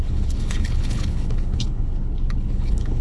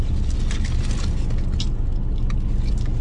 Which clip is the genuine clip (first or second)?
second